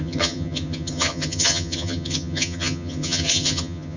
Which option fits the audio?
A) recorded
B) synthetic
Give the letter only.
B